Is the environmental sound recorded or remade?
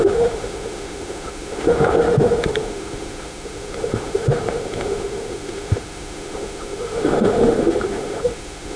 remade